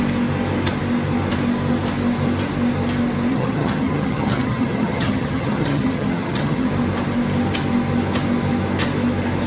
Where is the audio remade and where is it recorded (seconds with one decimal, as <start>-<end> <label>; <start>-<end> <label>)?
0.0-3.3 recorded; 3.3-6.7 remade; 6.7-9.5 recorded